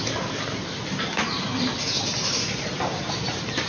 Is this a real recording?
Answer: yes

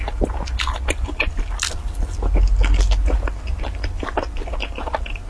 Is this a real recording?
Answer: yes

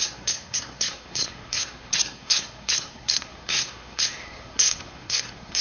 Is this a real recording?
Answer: no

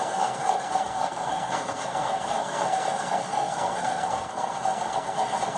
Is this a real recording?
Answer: no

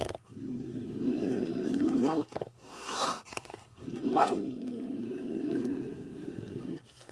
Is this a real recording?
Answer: no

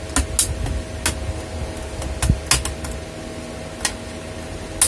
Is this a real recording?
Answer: yes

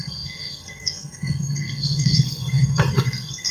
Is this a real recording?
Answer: no